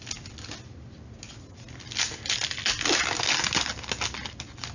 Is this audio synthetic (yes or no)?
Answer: no